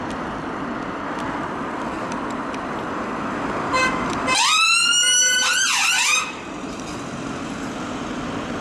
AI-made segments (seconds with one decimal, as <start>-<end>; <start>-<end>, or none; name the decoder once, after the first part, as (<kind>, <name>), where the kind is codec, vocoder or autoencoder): 6.1-6.9 (vocoder, BigVGAN v2)